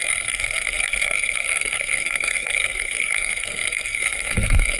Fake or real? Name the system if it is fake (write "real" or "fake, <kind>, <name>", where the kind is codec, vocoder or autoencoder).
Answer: fake, codec, SNAC